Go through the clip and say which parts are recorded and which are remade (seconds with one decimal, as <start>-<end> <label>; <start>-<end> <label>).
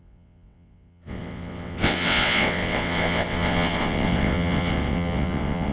0.0-5.7 remade